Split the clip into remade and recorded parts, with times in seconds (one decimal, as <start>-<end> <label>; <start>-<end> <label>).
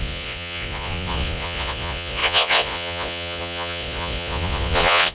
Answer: 0.0-5.1 remade